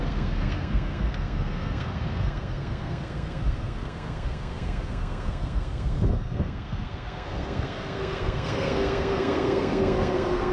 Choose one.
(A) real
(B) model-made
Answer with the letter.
B